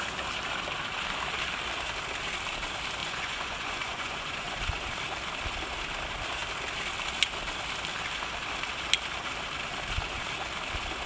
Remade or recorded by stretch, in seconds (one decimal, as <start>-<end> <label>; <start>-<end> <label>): 0.0-3.0 recorded; 3.0-4.6 remade; 4.6-11.1 recorded